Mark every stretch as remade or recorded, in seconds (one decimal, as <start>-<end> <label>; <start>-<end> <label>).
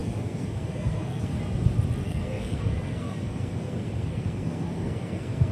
0.0-1.4 remade; 1.4-2.0 recorded; 2.0-5.5 remade